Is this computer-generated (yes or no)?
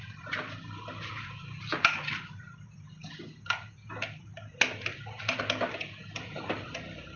no